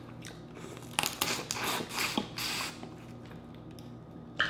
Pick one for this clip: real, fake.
real